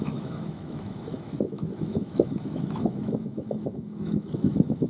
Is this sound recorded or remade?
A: remade